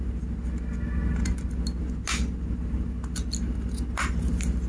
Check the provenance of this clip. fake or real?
real